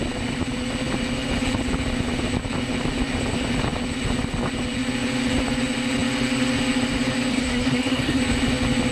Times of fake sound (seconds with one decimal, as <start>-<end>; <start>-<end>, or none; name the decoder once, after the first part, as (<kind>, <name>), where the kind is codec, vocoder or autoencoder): 7.3-8.2 (codec, SNAC)